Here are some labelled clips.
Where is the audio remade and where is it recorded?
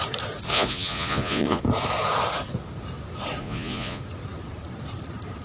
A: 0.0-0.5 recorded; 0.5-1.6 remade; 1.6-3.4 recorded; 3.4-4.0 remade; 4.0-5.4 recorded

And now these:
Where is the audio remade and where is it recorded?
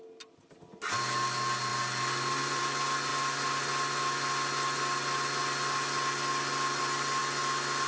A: 0.0-7.9 recorded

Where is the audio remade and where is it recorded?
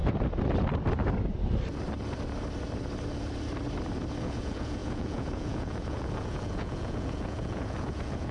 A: 0.0-4.2 recorded; 4.2-8.3 remade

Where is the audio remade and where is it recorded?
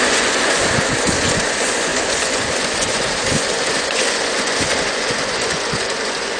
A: 0.0-6.4 remade